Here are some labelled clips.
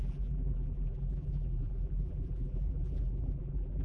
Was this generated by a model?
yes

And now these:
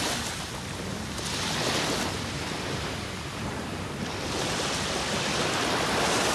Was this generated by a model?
no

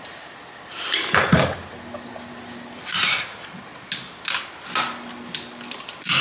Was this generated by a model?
no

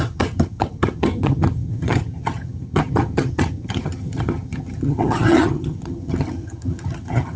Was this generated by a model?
yes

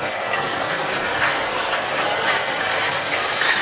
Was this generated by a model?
yes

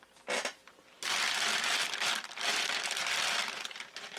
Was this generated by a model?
no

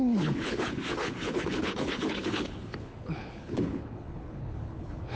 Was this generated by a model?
yes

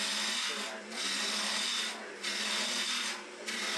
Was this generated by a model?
no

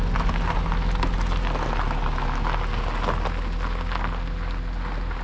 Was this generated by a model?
no